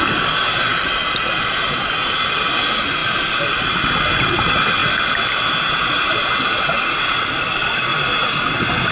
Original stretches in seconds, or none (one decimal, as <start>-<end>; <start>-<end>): 0.0-8.9